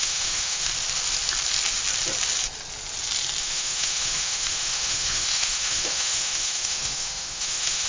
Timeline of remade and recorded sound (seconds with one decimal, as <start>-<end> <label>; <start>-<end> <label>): 0.0-0.7 remade; 0.7-3.4 recorded; 3.4-7.9 remade